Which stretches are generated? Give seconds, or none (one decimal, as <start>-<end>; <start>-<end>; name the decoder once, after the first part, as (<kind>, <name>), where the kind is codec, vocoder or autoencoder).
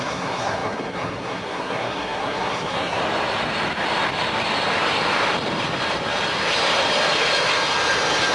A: 0.0-3.0 (codec, SNAC)